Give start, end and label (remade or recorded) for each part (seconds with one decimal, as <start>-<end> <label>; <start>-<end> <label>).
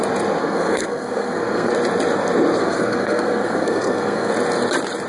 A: 0.0-0.4 recorded; 0.4-1.7 remade; 1.7-2.6 recorded; 2.6-4.3 remade; 4.3-5.1 recorded